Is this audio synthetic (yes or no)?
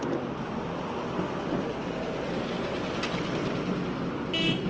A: no